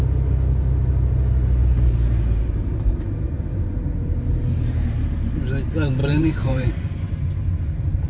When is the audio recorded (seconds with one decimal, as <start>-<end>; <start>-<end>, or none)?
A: 0.0-1.6; 5.4-6.0; 6.7-8.1